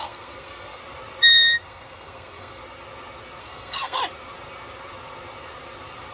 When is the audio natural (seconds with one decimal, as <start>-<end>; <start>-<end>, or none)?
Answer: 0.8-1.6; 2.6-3.4; 4.0-6.1

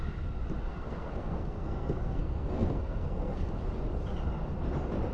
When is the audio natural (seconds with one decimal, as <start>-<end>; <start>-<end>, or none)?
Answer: 0.0-0.7; 3.5-5.1

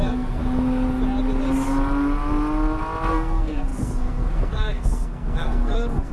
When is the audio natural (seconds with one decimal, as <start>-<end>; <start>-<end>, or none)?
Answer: 0.4-3.1

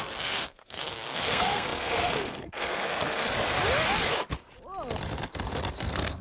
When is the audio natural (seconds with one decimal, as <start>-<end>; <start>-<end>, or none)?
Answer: 3.2-5.7

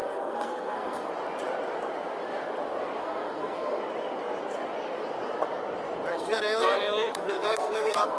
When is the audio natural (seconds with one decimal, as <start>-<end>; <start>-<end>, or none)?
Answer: 1.1-3.0; 3.8-6.1

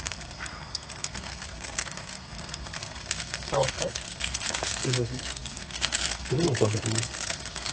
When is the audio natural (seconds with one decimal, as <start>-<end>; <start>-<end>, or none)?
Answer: none

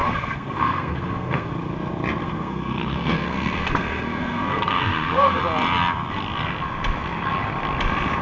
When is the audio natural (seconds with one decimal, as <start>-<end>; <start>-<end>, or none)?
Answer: 1.5-2.2; 5.4-8.2

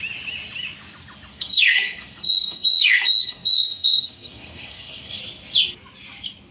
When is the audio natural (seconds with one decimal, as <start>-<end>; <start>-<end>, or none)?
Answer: 0.0-1.3; 5.2-6.5